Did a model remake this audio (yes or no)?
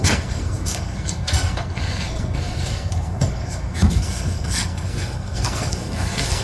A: yes